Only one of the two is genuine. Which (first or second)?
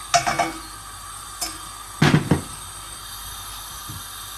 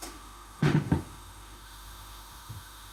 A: first